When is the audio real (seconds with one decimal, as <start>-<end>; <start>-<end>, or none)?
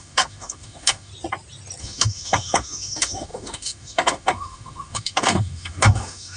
1.1-1.8